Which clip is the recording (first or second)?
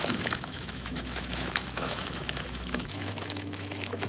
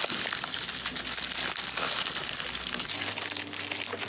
second